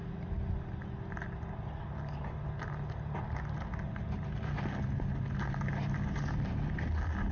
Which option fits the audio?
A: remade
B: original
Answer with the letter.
B